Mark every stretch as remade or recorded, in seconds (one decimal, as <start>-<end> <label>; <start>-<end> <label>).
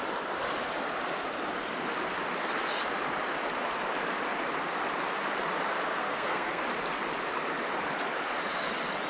0.0-6.0 recorded; 6.0-6.6 remade; 6.6-9.1 recorded